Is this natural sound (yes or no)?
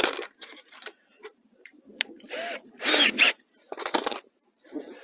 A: no